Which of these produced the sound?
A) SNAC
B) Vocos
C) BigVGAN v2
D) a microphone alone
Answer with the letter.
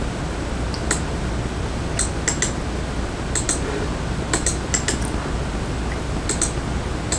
D